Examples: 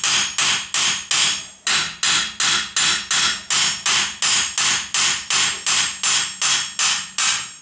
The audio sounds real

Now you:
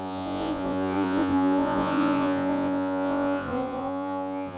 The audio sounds fake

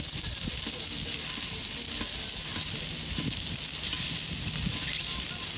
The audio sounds real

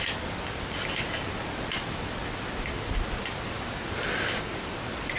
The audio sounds real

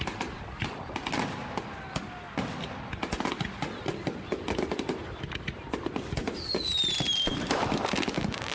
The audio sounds real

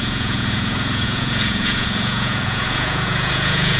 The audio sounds fake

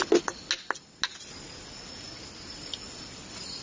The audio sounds real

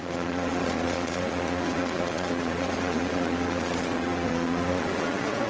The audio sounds fake